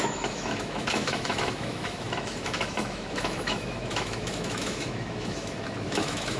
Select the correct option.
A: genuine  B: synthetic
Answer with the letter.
B